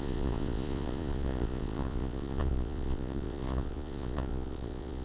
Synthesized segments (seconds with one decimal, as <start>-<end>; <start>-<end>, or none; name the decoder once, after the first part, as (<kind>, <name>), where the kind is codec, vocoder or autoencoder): 0.0-5.0 (vocoder, Vocos)